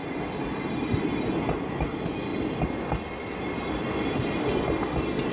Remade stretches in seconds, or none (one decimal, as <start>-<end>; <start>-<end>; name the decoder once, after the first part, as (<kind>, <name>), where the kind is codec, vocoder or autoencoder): none